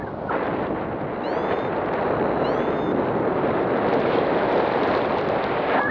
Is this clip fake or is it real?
real